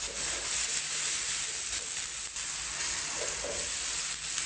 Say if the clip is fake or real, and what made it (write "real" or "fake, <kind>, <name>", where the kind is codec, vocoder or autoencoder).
real